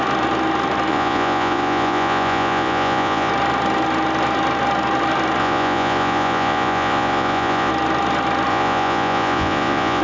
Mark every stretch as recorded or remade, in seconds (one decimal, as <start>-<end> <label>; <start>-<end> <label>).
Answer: 0.0-0.9 recorded; 0.9-3.3 remade; 3.3-5.4 recorded; 5.4-7.7 remade; 7.7-8.5 recorded; 8.5-10.0 remade